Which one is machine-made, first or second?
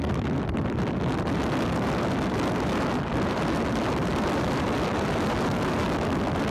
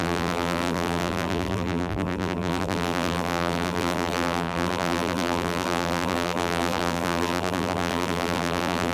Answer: second